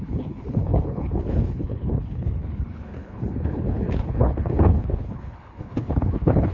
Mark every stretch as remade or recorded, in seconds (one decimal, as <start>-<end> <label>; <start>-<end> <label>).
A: 0.0-6.5 remade